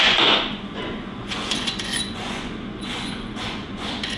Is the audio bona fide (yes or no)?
no